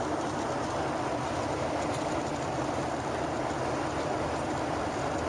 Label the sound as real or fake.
real